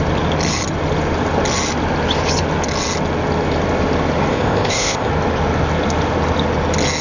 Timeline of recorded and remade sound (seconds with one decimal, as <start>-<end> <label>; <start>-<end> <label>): 0.0-4.3 recorded; 4.3-5.1 remade; 5.1-7.0 recorded